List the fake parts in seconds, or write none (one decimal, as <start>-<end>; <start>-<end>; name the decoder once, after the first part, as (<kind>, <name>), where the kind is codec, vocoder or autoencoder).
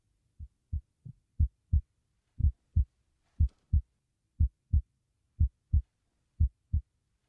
none